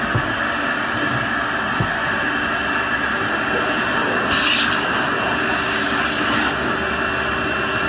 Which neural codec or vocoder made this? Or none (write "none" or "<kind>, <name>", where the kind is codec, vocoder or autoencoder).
none